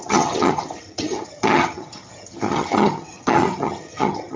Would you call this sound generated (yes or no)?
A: yes